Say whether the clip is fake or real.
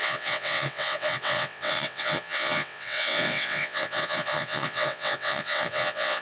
fake